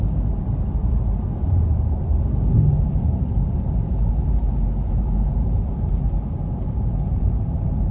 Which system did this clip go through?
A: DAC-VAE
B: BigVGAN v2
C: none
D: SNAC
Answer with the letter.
C